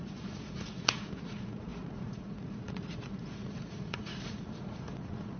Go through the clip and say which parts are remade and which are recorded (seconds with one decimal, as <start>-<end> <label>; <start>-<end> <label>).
0.0-5.4 remade